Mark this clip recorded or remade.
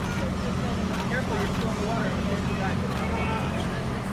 recorded